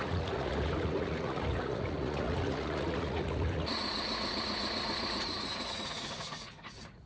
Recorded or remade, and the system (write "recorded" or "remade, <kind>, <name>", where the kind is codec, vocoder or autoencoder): remade, vocoder, Vocos